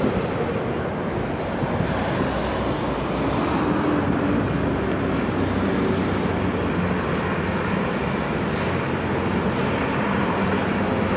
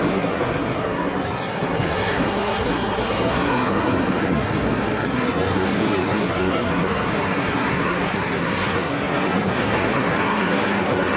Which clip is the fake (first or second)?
second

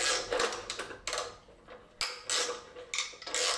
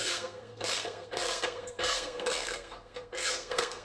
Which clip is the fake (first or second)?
second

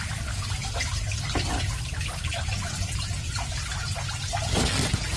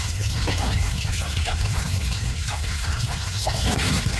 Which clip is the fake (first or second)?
second